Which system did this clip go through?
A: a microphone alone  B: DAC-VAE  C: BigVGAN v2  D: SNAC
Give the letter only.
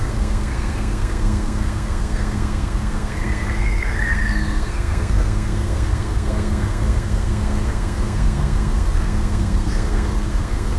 D